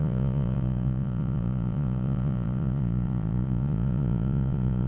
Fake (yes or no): yes